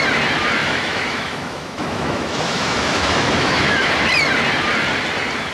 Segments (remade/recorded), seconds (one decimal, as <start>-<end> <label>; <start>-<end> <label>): 0.0-0.6 recorded; 0.6-3.9 remade; 3.9-5.5 recorded